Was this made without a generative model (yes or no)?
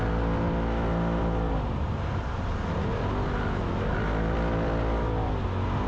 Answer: yes